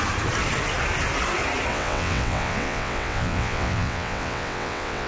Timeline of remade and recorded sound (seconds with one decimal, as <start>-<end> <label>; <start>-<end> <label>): 0.0-1.7 recorded; 1.7-5.1 remade